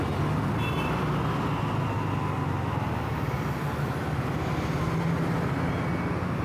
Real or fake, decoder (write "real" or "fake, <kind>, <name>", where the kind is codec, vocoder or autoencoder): real